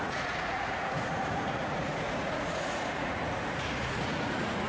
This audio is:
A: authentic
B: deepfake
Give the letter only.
B